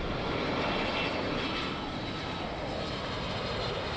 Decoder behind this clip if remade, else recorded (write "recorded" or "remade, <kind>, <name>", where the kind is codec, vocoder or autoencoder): recorded